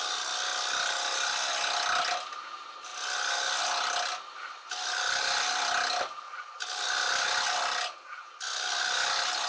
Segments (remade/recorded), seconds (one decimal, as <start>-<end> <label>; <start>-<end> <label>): 0.0-9.5 recorded

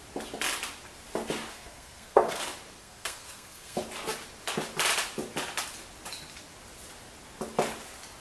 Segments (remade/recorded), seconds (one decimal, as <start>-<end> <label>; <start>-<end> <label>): 0.0-1.5 recorded; 1.5-2.4 remade; 2.4-2.8 recorded; 2.8-3.8 remade; 3.8-8.2 recorded

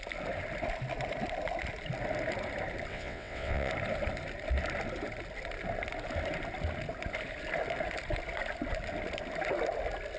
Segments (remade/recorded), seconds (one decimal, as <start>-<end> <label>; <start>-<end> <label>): 0.0-2.9 recorded; 2.9-3.7 remade; 3.7-10.2 recorded

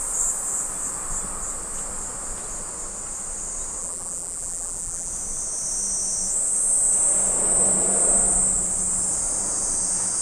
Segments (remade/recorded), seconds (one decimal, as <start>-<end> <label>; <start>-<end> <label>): 0.0-3.8 recorded; 3.8-5.1 remade; 5.1-10.2 recorded

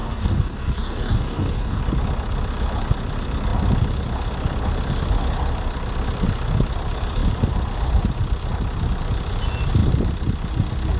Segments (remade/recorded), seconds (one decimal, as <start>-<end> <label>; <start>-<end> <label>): 0.0-1.8 remade; 1.8-11.0 recorded

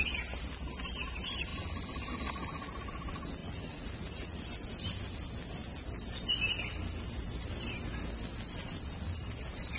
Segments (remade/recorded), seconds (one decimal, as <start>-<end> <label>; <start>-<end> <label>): 0.0-3.4 recorded; 3.4-4.4 remade; 4.4-9.8 recorded

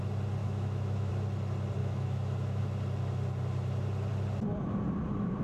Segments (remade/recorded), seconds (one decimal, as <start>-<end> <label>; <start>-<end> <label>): 0.0-0.4 recorded; 0.4-1.1 remade; 1.1-1.8 recorded; 1.8-2.6 remade; 2.6-5.4 recorded